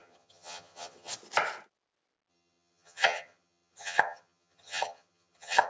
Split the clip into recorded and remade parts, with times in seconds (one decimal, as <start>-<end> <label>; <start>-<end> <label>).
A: 0.0-1.1 remade; 1.1-2.3 recorded; 2.3-5.7 remade